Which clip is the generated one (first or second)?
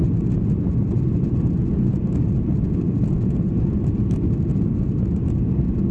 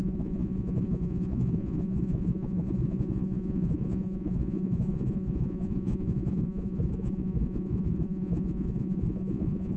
second